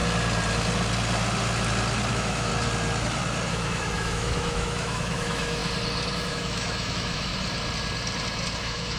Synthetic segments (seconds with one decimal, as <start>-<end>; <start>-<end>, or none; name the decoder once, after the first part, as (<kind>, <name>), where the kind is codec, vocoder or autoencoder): 2.1-2.5 (autoencoder, DAC-VAE); 3.5-5.6; 6.3-7.3; 8.6-9.0